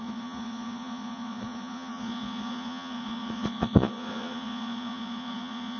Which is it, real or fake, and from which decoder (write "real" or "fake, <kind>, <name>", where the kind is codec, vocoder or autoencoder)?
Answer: fake, vocoder, Vocos